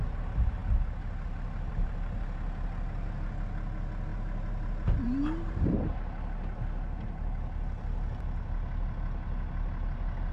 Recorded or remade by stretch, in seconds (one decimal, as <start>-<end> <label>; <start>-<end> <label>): 0.0-4.1 recorded; 4.1-5.7 remade; 5.7-10.3 recorded

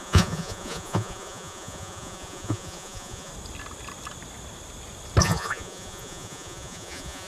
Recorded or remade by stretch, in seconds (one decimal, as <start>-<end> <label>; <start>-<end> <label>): 0.0-3.3 remade; 3.3-5.2 recorded; 5.2-7.3 remade

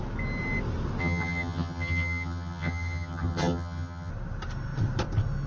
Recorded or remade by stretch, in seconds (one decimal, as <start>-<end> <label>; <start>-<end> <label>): 0.0-1.0 recorded; 1.0-4.1 remade; 4.1-5.5 recorded

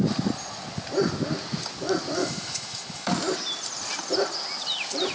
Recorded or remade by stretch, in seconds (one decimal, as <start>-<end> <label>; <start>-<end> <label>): 0.0-2.2 recorded; 2.2-3.1 remade; 3.1-5.1 recorded